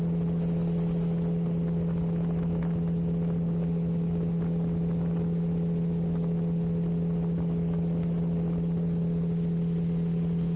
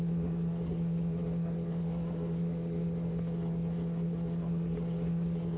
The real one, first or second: first